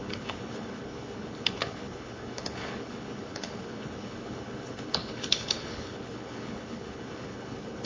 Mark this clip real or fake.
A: fake